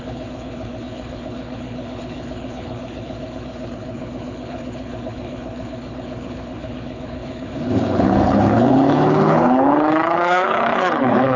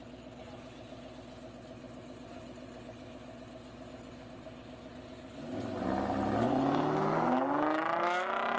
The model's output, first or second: first